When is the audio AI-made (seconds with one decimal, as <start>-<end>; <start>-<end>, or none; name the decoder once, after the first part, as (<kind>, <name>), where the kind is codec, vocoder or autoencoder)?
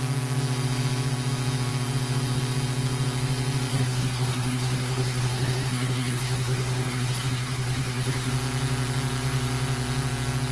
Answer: 3.7-8.3 (codec, SNAC)